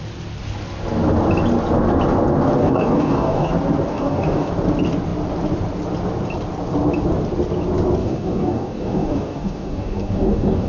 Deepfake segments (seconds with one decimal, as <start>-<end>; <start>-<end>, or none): 2.6-3.5; 3.9-4.5; 8.0-10.7